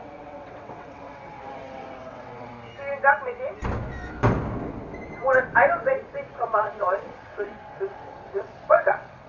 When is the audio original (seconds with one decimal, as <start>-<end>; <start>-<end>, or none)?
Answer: 2.5-6.3